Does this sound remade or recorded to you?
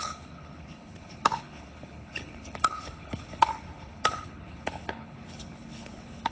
remade